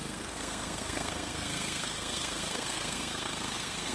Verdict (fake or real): fake